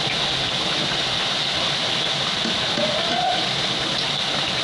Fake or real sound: real